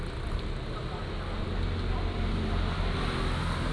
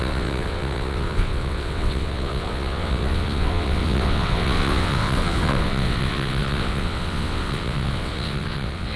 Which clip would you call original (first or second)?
first